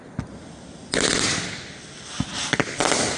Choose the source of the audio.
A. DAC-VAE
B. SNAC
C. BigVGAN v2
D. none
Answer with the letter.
D